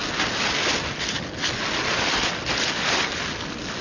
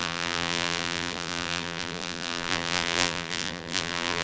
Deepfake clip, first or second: second